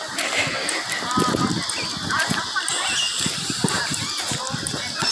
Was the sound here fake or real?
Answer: real